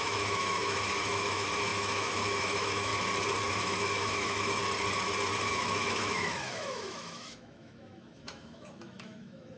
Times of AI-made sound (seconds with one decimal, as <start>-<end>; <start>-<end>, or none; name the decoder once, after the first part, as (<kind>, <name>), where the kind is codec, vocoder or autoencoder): 0.0-2.9 (autoencoder, DAC-VAE); 3.5-4.6; 5.5-9.6

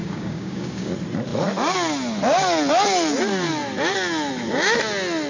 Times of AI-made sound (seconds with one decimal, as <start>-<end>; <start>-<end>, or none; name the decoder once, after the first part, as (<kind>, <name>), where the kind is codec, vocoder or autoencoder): 0.0-0.9 (codec, DAC)

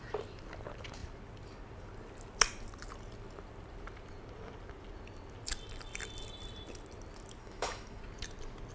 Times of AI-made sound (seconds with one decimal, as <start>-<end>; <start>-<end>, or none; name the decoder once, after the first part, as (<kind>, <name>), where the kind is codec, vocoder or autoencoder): 7.4-8.0 (autoencoder, DAC-VAE)

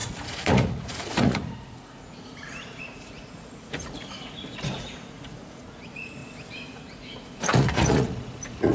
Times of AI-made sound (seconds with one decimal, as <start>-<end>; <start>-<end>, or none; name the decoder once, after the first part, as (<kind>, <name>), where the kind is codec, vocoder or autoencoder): 0.0-6.2 (vocoder, Vocos); 6.7-8.7

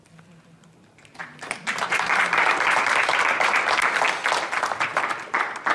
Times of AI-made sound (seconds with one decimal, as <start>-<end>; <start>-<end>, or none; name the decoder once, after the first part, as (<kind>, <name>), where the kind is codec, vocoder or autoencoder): 1.2-3.6 (vocoder, BigVGAN v2)